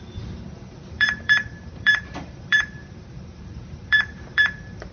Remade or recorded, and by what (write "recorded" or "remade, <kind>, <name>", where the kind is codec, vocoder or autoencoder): remade, vocoder, BigVGAN v2